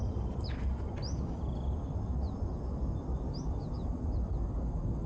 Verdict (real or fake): real